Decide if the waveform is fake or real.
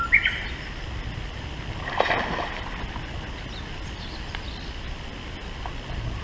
fake